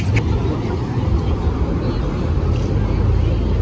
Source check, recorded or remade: recorded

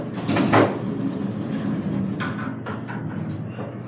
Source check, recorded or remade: recorded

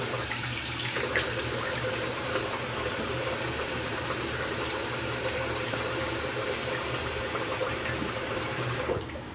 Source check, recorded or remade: remade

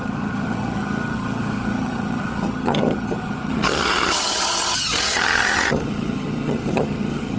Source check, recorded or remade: remade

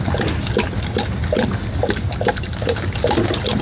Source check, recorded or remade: recorded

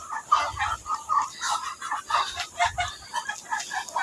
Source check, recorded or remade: recorded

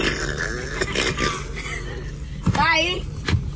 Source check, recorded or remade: recorded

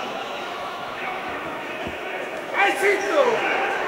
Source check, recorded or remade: remade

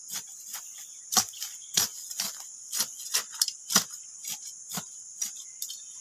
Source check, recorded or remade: recorded